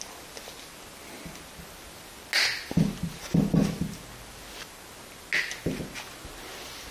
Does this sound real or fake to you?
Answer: real